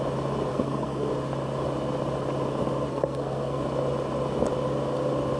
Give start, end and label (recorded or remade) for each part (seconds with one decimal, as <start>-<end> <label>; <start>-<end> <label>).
0.0-0.5 recorded; 0.5-1.1 remade; 1.1-2.9 recorded; 2.9-3.6 remade; 3.6-5.4 recorded